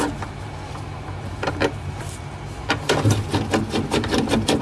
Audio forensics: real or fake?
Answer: real